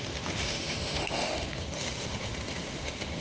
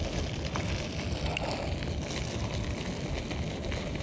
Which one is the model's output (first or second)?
first